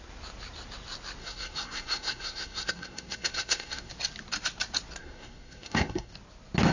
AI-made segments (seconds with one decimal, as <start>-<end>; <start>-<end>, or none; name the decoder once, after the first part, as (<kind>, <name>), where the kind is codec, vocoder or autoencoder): 1.2-3.9 (codec, SNAC); 5.0-6.1